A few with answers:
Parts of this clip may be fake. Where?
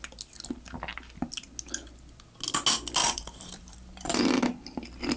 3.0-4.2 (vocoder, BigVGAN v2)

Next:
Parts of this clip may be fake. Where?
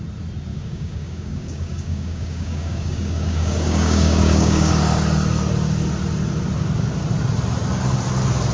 0.5-4.7 (codec, DAC)